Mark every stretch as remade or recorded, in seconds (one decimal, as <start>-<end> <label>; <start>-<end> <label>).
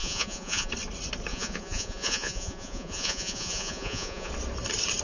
0.0-0.7 remade; 0.7-1.3 recorded; 1.3-4.3 remade; 4.3-5.0 recorded